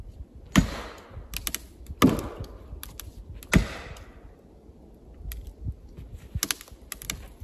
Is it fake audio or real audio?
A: real